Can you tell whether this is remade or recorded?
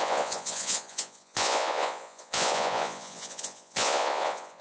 remade